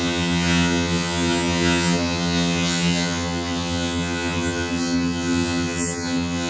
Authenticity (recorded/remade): remade